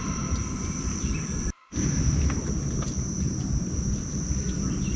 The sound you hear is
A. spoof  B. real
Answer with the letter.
B